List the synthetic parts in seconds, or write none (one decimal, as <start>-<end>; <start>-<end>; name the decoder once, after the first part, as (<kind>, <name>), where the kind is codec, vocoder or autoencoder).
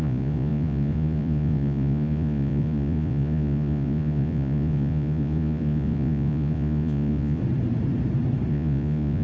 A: 0.0-7.4 (vocoder, Vocos); 8.5-9.2